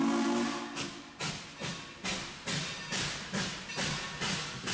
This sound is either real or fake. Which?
real